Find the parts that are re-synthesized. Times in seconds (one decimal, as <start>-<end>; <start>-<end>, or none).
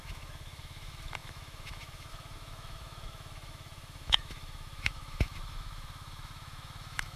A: 0.0-7.2